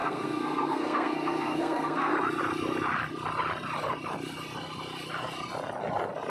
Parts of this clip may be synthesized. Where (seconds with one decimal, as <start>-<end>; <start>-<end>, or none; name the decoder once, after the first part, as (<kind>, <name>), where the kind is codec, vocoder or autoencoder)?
0.0-2.1 (codec, SNAC)